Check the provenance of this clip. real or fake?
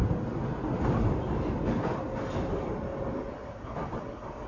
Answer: real